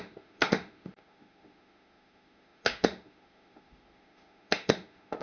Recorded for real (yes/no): no